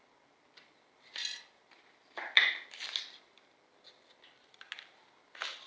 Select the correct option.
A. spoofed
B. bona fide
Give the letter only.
B